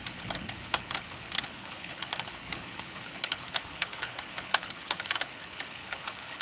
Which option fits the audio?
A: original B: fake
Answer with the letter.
B